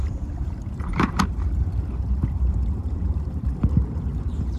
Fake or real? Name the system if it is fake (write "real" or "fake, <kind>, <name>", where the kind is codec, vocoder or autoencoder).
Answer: fake, vocoder, BigVGAN v2